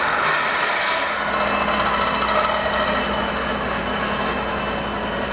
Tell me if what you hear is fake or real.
real